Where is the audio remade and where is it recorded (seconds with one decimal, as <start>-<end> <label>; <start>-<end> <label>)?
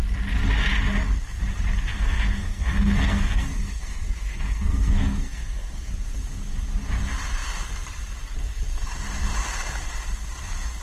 0.0-1.9 recorded; 1.9-5.9 remade; 5.9-10.8 recorded